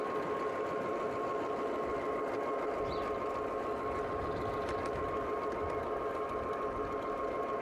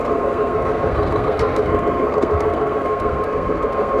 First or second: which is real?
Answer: first